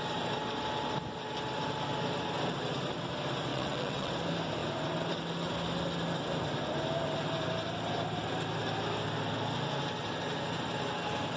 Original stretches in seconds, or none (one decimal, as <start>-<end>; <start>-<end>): 0.0-3.5; 4.1-11.4